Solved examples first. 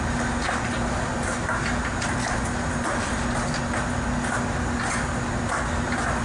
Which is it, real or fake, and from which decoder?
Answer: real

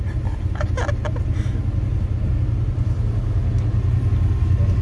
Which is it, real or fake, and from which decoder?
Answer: real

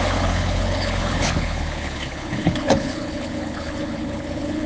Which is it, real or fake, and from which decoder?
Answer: fake, codec, HILCodec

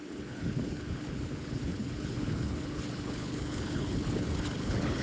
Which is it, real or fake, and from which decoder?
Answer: fake, codec, HILCodec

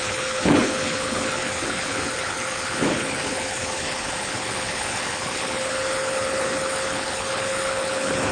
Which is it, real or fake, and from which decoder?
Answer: fake, codec, HILCodec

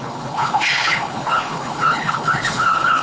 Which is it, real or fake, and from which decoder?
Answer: fake, codec, HILCodec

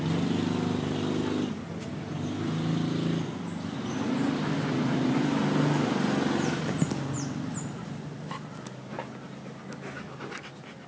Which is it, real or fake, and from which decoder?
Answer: real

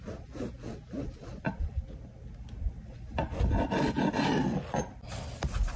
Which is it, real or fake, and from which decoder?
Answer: real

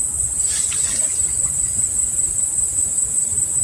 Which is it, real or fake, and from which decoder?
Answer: real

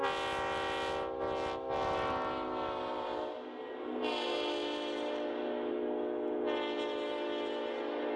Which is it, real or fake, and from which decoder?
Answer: real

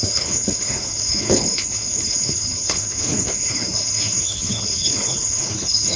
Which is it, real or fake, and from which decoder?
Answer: fake, codec, HILCodec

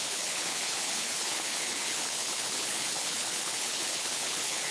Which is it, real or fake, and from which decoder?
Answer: fake, codec, HILCodec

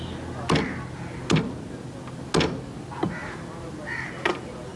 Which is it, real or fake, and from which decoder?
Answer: real